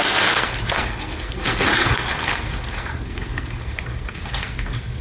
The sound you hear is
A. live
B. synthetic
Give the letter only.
B